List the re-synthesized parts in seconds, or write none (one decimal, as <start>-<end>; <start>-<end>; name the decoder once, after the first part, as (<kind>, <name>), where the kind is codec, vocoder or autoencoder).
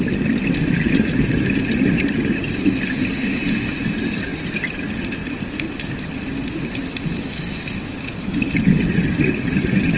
none